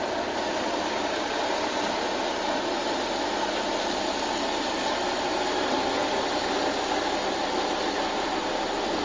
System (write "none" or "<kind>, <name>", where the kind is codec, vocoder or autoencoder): none